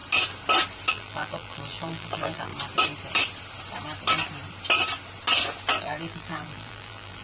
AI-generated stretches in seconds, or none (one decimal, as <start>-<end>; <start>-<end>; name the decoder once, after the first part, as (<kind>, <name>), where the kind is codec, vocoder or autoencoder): 0.9-2.5 (vocoder, BigVGAN v2); 5.8-7.2